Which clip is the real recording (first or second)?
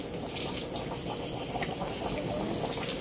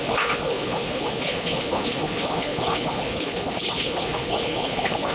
first